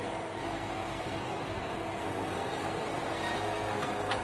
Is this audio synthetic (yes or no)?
yes